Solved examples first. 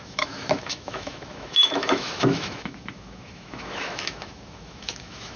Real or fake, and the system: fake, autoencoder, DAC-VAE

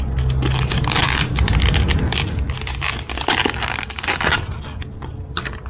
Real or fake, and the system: real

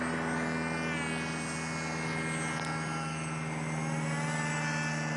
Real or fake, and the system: real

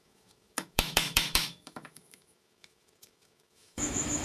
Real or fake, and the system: fake, autoencoder, DAC-VAE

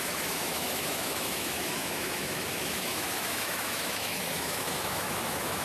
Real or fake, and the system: fake, autoencoder, DAC-VAE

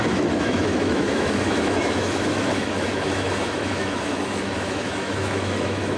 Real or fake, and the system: fake, autoencoder, DAC-VAE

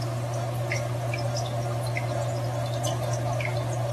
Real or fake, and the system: real